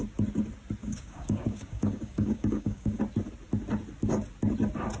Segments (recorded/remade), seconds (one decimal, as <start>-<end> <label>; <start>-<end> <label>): 0.0-0.8 recorded; 0.8-3.0 remade; 3.0-5.0 recorded